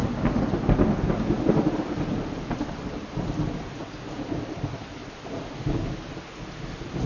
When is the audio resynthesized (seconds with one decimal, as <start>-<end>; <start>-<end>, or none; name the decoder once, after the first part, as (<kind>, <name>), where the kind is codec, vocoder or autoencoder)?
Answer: none